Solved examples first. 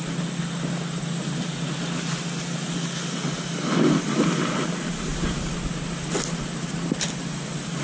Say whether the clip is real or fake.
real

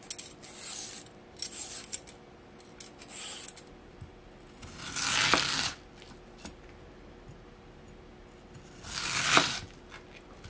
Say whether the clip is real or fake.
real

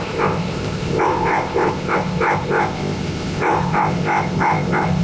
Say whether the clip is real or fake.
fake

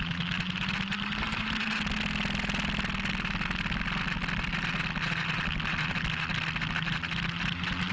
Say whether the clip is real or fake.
real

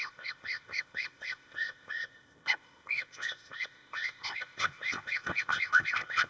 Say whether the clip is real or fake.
fake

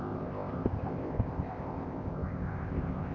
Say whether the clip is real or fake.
fake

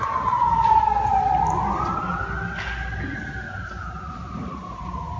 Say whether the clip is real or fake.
real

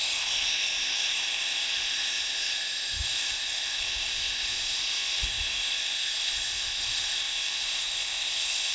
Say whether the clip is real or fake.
fake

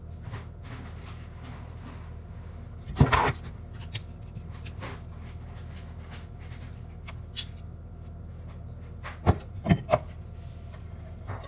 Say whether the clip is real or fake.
real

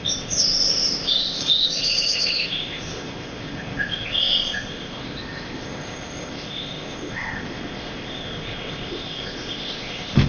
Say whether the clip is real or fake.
fake